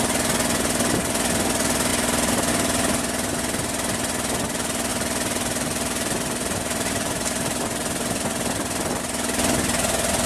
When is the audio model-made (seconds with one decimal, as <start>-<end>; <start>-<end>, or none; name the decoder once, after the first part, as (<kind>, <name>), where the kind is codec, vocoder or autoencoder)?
1.9-2.5 (vocoder, BigVGAN v2); 4.9-9.0